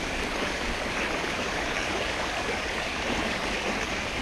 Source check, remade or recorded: remade